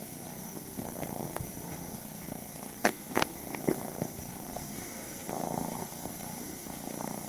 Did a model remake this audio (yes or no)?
yes